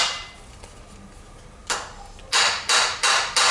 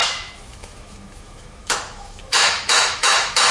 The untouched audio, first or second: first